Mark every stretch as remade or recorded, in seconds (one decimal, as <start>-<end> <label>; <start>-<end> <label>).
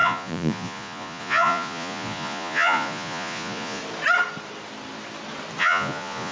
0.0-3.8 remade; 3.8-5.6 recorded; 5.6-6.3 remade